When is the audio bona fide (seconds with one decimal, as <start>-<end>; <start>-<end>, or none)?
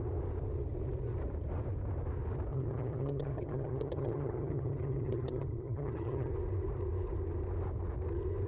0.0-2.5; 6.3-8.5